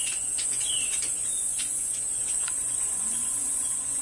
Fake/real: fake